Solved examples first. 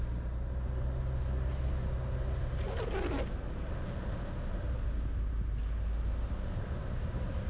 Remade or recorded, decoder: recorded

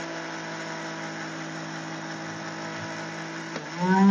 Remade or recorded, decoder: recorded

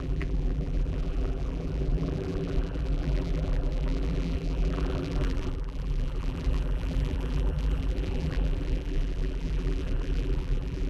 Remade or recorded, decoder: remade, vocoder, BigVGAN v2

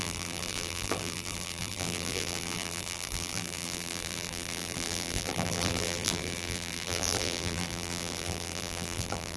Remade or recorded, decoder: remade, vocoder, BigVGAN v2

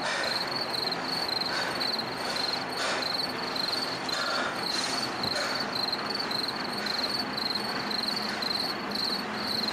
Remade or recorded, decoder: recorded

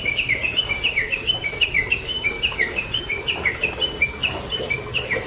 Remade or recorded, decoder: remade, vocoder, BigVGAN v2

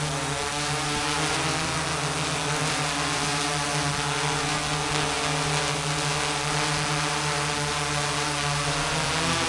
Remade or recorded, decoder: recorded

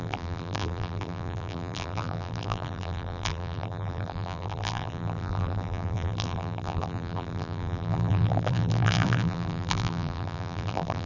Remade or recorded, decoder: remade, vocoder, BigVGAN v2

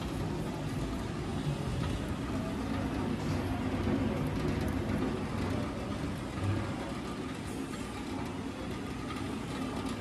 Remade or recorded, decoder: recorded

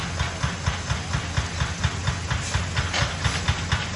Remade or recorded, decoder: recorded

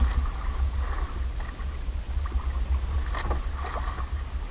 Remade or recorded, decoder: recorded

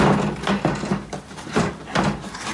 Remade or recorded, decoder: recorded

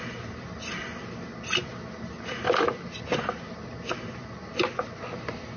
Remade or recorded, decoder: recorded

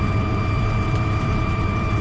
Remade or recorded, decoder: remade, vocoder, BigVGAN v2